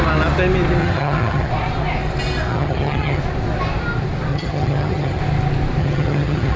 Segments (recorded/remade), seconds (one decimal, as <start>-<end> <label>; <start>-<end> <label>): 0.0-0.8 recorded; 0.8-1.5 remade; 1.5-2.5 recorded; 2.5-3.2 remade; 3.2-4.3 recorded; 4.3-5.2 remade; 5.2-5.8 recorded; 5.8-6.6 remade